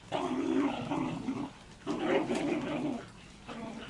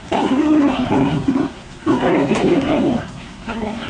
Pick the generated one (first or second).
second